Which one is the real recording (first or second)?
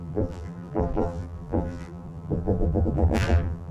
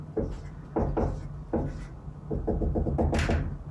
second